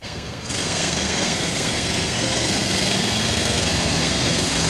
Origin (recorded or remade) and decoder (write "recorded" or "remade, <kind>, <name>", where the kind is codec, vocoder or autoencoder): remade, codec, SNAC